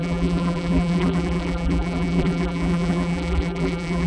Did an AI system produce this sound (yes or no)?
yes